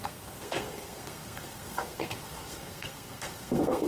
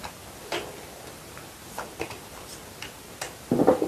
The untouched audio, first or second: second